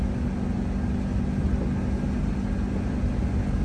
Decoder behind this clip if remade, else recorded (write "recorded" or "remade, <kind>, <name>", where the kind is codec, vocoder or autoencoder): recorded